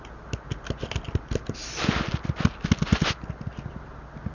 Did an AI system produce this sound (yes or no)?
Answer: no